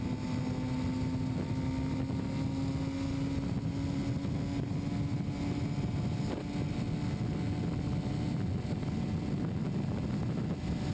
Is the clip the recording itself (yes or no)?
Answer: yes